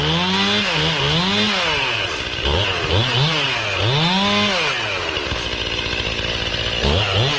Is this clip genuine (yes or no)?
yes